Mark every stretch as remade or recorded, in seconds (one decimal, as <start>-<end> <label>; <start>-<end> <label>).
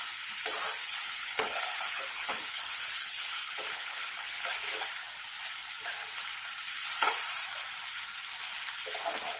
0.0-0.8 recorded; 0.8-4.4 remade; 4.4-9.4 recorded